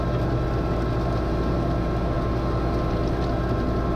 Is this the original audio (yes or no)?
yes